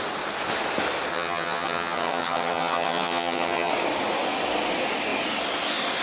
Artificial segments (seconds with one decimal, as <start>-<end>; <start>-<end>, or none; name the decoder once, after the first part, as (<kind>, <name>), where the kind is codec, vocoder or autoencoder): 1.1-3.7 (vocoder, HiFi-GAN)